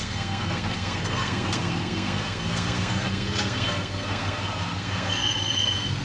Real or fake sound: fake